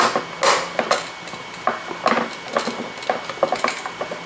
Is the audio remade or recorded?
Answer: recorded